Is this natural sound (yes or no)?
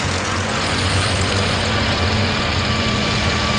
no